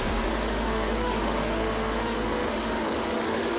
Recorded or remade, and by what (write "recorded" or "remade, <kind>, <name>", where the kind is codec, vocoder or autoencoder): remade, autoencoder, DAC-VAE